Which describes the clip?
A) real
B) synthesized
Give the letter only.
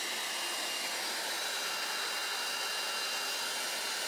A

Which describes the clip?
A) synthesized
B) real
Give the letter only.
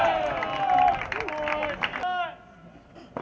B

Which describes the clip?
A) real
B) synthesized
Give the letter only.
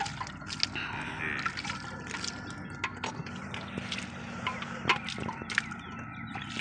A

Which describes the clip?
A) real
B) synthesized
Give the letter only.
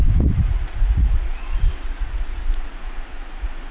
B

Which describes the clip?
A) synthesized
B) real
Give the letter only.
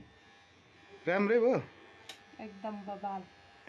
B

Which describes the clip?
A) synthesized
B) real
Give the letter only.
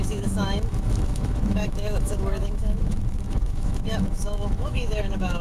A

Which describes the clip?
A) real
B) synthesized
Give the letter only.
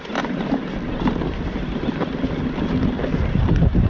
A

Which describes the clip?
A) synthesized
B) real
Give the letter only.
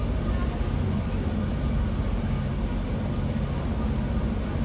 B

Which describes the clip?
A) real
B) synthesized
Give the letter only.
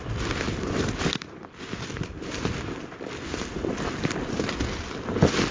A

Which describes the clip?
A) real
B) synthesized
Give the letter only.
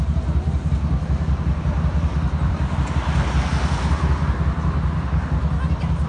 A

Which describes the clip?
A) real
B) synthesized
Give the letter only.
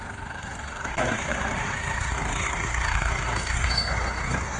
B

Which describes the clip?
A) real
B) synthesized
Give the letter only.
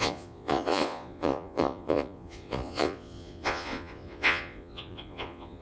B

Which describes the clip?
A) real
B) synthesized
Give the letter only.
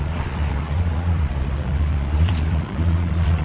B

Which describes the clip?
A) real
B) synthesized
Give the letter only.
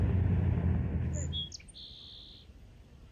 A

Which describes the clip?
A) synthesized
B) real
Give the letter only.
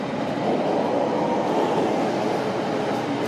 B